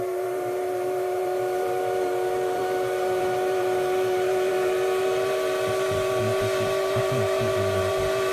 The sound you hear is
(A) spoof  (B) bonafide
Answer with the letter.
A